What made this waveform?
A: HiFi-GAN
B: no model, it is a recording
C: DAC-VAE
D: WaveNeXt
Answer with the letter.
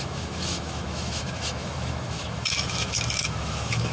C